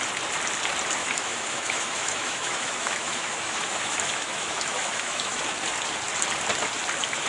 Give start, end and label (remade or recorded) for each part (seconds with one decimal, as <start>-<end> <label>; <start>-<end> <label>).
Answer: 0.0-1.0 recorded; 1.0-5.4 remade; 5.4-7.3 recorded